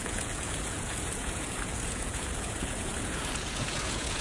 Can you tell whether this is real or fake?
fake